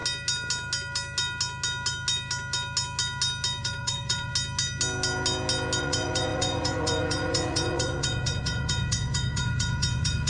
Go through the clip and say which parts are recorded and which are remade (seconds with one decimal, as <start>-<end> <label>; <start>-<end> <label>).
0.0-3.6 recorded; 3.6-4.3 remade; 4.3-5.8 recorded; 5.8-10.3 remade